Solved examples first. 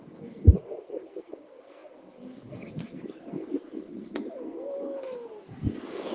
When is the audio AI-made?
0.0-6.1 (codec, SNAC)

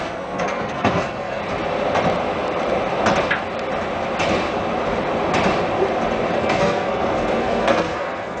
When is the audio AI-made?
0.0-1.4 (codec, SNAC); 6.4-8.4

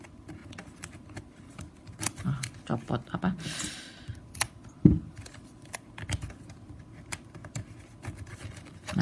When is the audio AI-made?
none

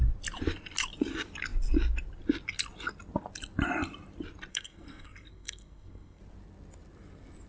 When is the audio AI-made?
4.5-6.2 (codec, SNAC)

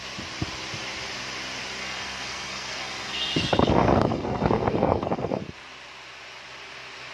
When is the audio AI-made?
1.8-5.4 (codec, SNAC)